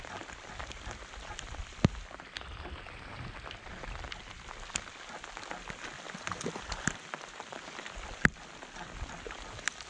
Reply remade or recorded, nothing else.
recorded